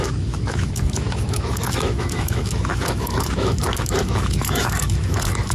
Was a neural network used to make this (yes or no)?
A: yes